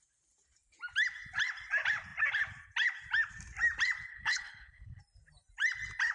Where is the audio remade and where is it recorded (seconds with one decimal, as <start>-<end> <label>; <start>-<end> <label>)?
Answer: 0.0-4.1 recorded; 4.1-5.0 remade; 5.0-6.1 recorded